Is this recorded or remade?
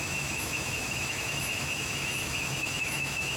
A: remade